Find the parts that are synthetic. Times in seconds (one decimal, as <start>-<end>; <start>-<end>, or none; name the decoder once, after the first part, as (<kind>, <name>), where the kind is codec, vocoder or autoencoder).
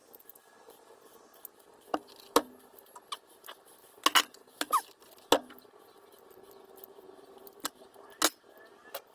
none